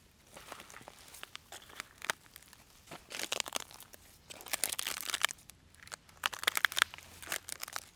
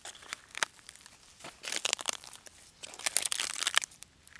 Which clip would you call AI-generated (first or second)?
second